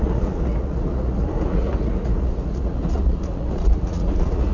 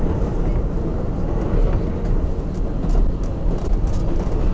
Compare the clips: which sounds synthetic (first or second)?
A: first